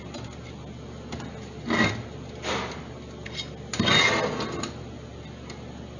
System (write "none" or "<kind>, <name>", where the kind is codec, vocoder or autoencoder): none